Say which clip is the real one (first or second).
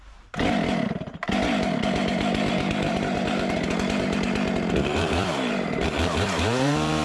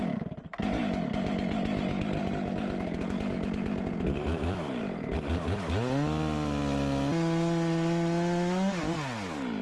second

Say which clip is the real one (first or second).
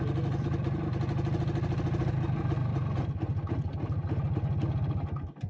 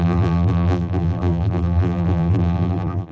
first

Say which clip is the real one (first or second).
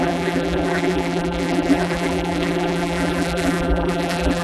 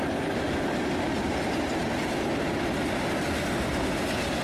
second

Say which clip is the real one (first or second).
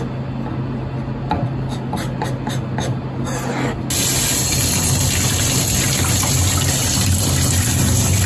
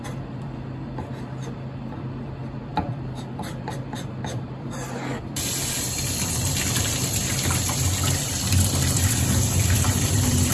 first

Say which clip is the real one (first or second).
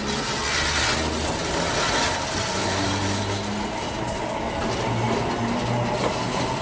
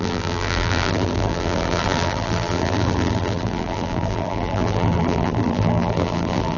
first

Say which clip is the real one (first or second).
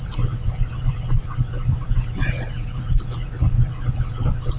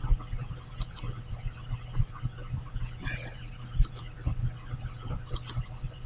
second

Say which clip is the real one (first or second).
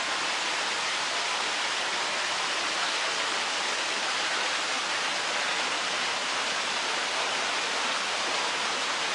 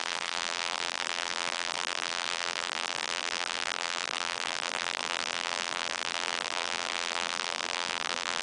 first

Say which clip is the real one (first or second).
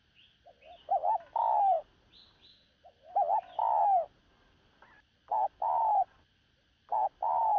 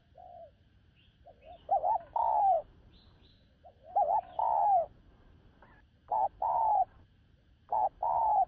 first